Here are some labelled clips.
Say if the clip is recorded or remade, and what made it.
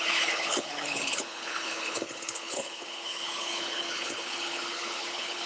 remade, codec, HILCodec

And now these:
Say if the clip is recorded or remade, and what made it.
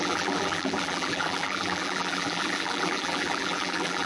remade, vocoder, BigVGAN v2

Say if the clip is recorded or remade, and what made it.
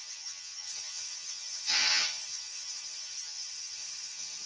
remade, vocoder, HiFi-GAN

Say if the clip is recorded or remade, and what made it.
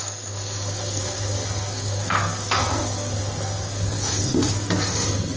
remade, codec, SNAC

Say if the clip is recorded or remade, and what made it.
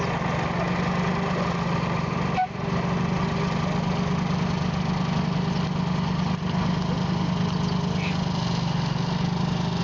recorded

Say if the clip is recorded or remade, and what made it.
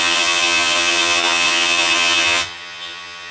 remade, vocoder, HiFi-GAN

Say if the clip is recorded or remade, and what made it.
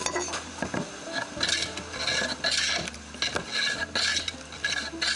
recorded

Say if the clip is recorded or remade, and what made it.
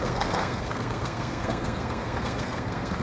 remade, codec, SNAC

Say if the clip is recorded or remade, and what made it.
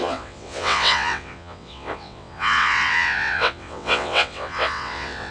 remade, vocoder, WaveNeXt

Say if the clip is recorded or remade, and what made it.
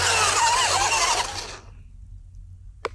recorded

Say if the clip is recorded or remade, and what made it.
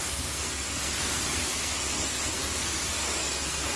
remade, codec, SNAC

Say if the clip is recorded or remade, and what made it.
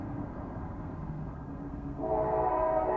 remade, codec, SNAC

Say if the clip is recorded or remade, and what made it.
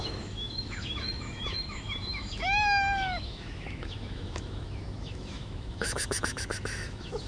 remade, autoencoder, DAC-VAE